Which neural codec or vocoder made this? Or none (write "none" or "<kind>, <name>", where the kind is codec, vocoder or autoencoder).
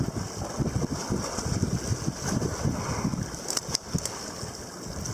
none